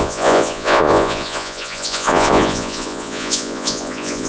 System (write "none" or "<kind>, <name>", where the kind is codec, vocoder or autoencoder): vocoder, Vocos